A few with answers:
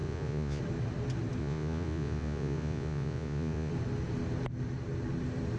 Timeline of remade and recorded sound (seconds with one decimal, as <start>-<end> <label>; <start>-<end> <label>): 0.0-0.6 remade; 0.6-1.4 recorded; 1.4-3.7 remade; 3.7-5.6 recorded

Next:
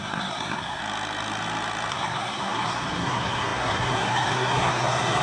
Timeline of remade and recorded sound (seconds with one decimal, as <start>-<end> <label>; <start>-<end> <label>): 0.0-0.8 remade; 0.8-1.9 recorded; 1.9-5.2 remade

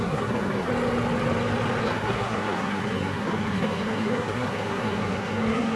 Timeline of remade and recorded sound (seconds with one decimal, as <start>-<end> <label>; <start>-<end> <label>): 0.0-0.7 remade; 0.7-1.8 recorded; 1.8-5.8 remade